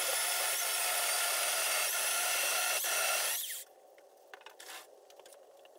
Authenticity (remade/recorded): recorded